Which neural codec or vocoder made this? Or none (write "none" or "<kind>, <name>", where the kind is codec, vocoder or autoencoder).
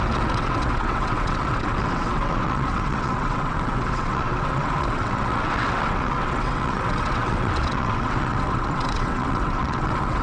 vocoder, WaveNeXt